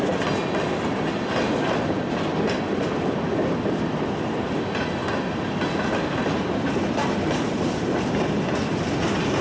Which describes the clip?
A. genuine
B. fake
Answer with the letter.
A